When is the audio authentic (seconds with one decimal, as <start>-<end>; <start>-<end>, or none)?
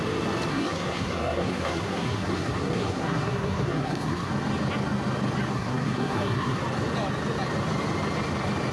0.0-0.5; 4.3-5.5; 6.6-8.7